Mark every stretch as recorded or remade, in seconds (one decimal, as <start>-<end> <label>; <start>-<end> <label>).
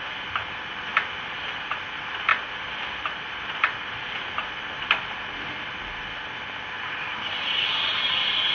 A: 0.0-0.9 recorded; 0.9-1.8 remade; 1.8-2.3 recorded; 2.3-6.2 remade; 6.2-8.5 recorded